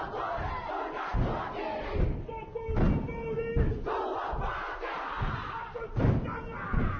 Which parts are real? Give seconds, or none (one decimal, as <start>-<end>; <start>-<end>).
0.0-7.0